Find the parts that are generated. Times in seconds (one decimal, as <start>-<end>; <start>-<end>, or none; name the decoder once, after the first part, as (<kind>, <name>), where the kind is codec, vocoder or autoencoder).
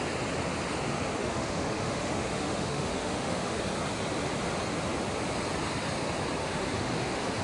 1.2-3.6 (autoencoder, DAC-VAE); 6.4-7.4